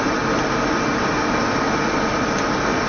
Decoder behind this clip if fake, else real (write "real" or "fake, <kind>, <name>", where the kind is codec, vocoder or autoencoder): real